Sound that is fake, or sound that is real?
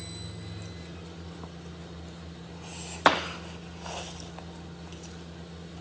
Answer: real